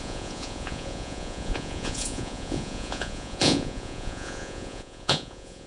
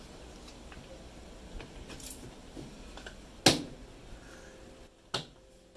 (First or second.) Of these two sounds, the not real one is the first